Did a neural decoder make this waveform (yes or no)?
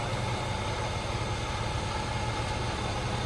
no